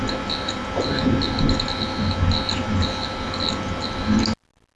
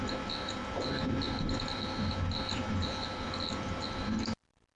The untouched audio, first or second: first